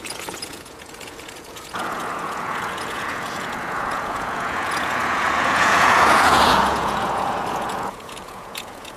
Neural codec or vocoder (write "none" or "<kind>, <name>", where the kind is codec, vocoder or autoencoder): vocoder, Vocos